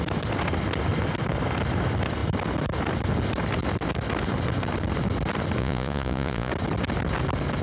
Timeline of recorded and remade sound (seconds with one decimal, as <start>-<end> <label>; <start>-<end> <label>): 0.0-5.6 recorded; 5.6-6.5 remade; 6.5-7.6 recorded